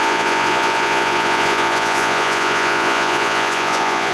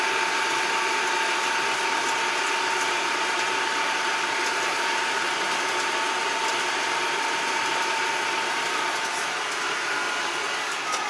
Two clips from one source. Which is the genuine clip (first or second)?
second